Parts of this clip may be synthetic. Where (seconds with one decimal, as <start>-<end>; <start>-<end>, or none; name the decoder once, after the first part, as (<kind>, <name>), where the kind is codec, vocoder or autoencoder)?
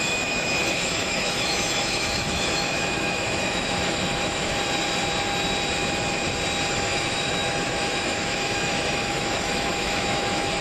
0.0-4.5 (autoencoder, DAC-VAE); 6.7-10.6